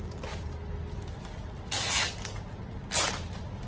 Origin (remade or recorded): recorded